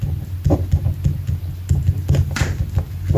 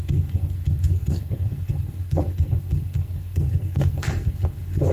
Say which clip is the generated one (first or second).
second